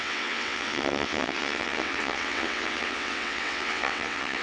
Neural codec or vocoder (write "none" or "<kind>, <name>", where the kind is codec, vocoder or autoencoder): vocoder, WaveNeXt